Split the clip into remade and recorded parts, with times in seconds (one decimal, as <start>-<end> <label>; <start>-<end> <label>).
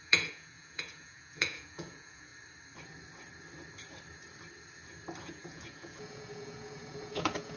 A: 0.0-2.3 remade; 2.3-5.2 recorded; 5.2-7.6 remade